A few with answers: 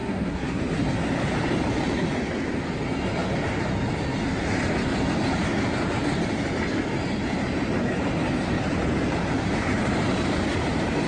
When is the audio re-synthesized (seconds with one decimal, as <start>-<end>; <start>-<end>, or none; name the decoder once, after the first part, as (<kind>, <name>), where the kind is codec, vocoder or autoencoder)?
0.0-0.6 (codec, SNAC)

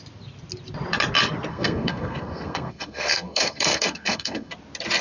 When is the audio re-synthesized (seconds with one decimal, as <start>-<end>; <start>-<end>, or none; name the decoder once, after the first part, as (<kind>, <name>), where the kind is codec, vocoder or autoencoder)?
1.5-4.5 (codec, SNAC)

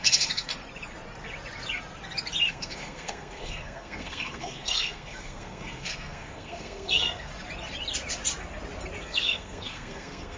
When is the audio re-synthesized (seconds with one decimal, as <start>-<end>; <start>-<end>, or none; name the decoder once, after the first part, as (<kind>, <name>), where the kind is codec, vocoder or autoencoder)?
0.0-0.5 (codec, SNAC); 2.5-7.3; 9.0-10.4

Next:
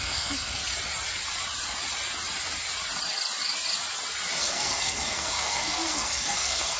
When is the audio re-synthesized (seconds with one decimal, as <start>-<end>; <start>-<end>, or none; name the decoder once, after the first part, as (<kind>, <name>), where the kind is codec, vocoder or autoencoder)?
0.0-0.6 (codec, SNAC); 4.4-6.8